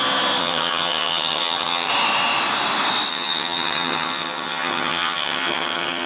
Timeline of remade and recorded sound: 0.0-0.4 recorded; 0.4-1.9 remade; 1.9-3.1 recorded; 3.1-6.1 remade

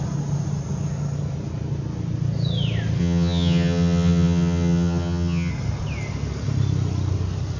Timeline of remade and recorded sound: 0.0-3.0 recorded; 3.0-5.5 remade; 5.5-7.6 recorded

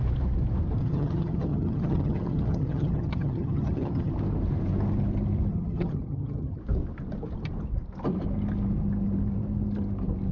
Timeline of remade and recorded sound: 0.0-0.8 recorded; 0.8-4.1 remade; 4.1-5.5 recorded; 5.5-6.6 remade; 6.6-10.3 recorded

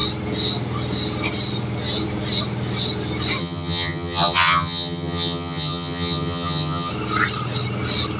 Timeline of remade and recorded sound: 0.0-3.4 recorded; 3.4-6.9 remade; 6.9-8.2 recorded

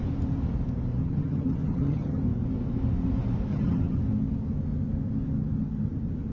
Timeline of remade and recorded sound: 0.0-1.0 recorded; 1.0-2.2 remade; 2.2-3.5 recorded; 3.5-4.0 remade; 4.0-6.3 recorded

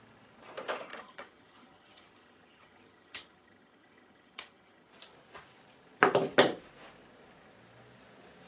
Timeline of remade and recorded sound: 0.0-0.9 recorded; 0.9-4.9 remade; 4.9-8.5 recorded

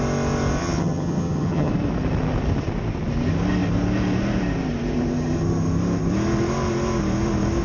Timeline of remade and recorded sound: 0.0-0.6 recorded; 0.6-1.7 remade; 1.7-7.6 recorded

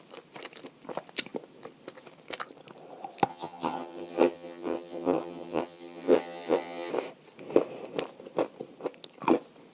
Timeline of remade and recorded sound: 0.0-3.3 recorded; 3.3-6.9 remade; 6.9-9.7 recorded